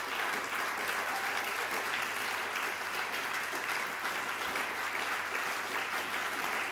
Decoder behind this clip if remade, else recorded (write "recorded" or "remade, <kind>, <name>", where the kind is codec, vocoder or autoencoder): recorded